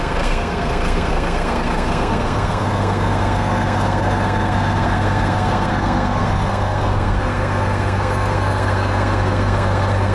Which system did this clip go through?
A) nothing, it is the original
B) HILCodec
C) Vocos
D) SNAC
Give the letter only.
D